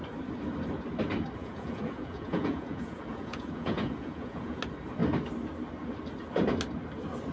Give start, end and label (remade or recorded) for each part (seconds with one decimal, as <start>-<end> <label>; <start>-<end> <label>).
0.0-1.4 recorded; 1.4-4.6 remade; 4.6-7.3 recorded